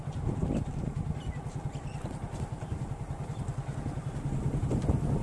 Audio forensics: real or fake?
real